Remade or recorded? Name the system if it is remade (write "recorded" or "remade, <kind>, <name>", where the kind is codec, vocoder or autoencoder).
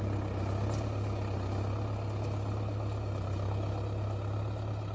recorded